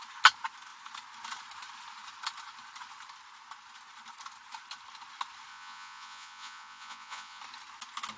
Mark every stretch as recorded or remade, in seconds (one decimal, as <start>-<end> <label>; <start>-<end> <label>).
0.0-5.5 recorded; 5.5-7.4 remade; 7.4-8.2 recorded

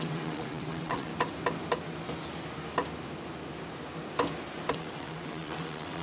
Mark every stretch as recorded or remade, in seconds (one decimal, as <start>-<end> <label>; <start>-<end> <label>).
0.0-1.1 remade; 1.1-4.7 recorded; 4.7-6.0 remade

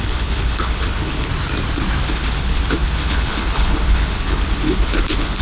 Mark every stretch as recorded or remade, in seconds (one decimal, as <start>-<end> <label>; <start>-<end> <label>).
0.0-1.3 remade; 1.3-2.0 recorded; 2.0-5.4 remade